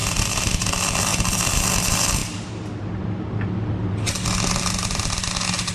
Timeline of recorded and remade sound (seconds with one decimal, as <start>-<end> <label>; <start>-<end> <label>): 0.0-0.7 remade; 0.7-1.1 recorded; 1.1-1.8 remade; 1.8-5.7 recorded